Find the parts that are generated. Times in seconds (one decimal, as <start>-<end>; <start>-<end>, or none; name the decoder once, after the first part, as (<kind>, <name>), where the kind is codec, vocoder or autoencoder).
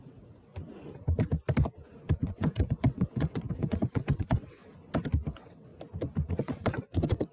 0.0-0.5 (vocoder, WaveNeXt); 2.2-4.6; 5.3-5.7; 6.3-7.3